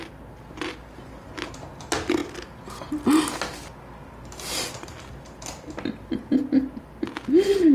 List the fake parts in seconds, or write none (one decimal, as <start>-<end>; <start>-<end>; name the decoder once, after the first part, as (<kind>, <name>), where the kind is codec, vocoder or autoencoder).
0.0-2.2 (vocoder, BigVGAN v2); 6.8-7.7